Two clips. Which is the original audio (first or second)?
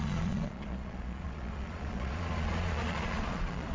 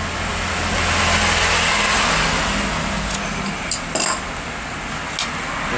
second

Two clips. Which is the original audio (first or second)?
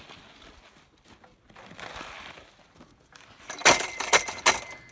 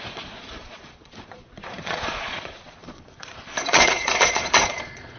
first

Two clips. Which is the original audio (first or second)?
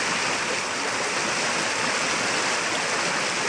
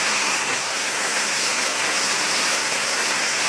first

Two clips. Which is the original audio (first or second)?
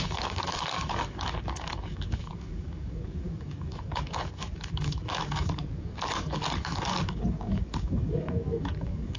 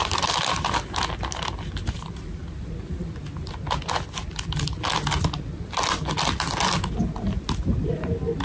second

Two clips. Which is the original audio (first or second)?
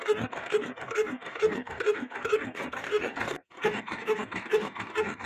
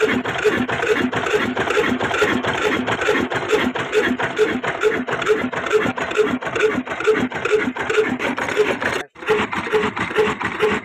second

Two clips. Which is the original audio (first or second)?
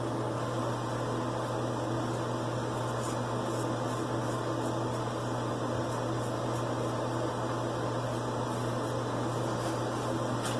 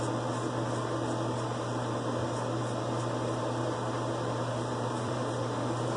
first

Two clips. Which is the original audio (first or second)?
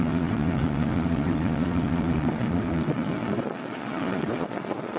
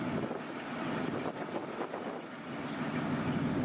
second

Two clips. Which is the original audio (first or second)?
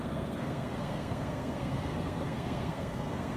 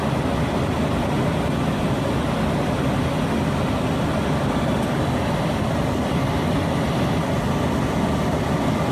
second